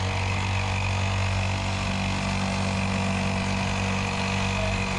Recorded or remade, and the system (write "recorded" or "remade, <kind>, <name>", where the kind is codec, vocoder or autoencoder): recorded